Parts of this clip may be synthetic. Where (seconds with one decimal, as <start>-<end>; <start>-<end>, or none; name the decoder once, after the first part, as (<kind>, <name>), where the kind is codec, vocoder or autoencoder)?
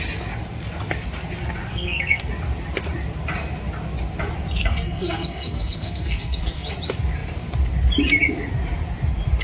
1.7-2.3 (codec, SNAC); 4.6-6.7